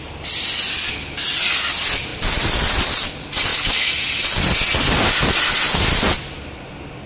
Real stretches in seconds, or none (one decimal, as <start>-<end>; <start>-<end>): 0.0-2.1; 3.1-7.1